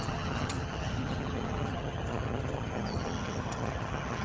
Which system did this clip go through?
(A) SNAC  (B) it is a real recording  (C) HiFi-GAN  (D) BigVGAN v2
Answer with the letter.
C